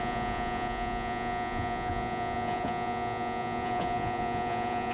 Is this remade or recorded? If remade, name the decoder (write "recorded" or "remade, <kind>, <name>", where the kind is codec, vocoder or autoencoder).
remade, vocoder, Vocos